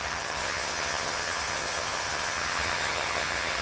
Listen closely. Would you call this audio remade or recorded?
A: remade